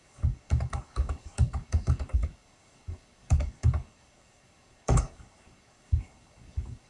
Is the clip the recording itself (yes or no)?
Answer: no